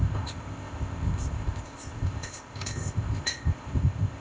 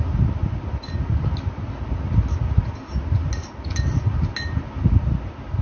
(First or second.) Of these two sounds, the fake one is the first